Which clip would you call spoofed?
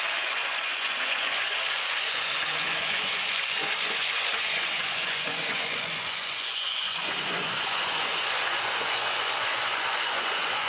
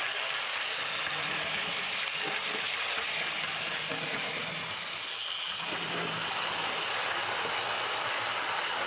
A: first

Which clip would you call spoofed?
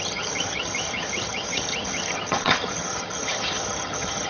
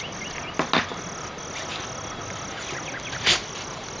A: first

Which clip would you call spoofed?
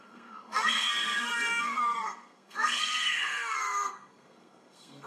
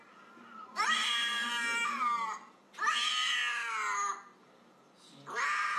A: first